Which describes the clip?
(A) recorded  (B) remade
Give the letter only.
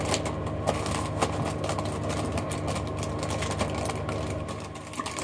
A